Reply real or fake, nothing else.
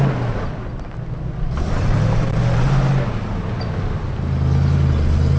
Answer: real